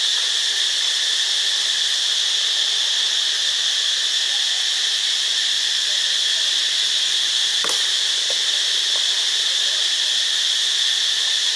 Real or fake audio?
real